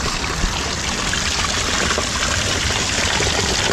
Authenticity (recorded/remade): remade